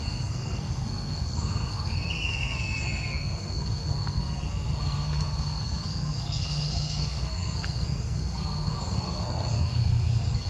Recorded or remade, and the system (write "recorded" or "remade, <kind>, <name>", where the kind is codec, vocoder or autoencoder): remade, codec, SNAC